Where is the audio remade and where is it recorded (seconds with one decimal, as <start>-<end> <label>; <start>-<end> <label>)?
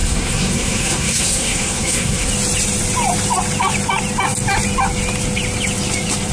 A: 0.0-2.3 remade; 2.3-6.3 recorded